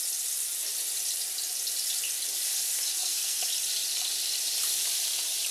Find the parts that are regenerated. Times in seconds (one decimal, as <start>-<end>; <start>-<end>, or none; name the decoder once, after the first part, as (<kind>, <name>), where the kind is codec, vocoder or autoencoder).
2.9-3.4 (codec, SNAC)

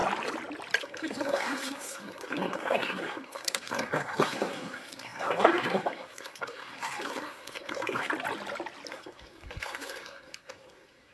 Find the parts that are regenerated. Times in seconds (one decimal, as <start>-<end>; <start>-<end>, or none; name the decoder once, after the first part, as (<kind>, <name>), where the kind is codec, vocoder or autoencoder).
0.8-8.1 (codec, SNAC); 8.9-11.1

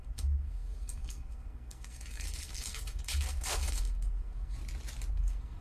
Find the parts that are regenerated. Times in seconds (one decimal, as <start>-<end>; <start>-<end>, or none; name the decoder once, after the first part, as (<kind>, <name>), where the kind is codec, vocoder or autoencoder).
0.0-4.6 (codec, SNAC); 5.1-5.6

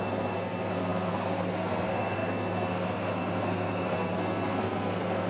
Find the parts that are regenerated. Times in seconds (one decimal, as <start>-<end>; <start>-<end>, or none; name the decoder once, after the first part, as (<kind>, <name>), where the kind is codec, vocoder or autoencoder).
0.0-5.3 (codec, SNAC)

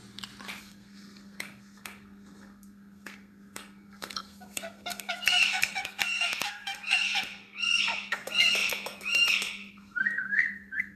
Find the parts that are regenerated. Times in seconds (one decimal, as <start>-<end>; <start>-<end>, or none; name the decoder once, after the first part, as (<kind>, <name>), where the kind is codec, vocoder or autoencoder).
0.6-11.0 (codec, SNAC)

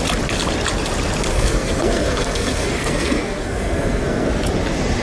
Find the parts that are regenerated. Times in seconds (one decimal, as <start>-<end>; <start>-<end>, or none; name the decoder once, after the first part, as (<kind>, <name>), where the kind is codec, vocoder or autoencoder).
1.3-4.3 (codec, SNAC)

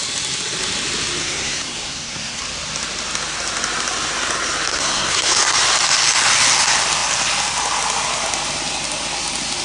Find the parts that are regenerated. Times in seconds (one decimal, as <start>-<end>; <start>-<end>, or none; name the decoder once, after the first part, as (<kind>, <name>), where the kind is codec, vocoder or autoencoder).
1.2-2.4 (codec, SNAC); 4.7-5.3